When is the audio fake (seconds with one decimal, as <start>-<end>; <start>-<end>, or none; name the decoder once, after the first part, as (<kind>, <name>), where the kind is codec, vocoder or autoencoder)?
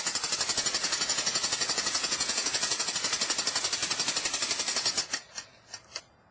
0.8-2.9 (vocoder, Vocos)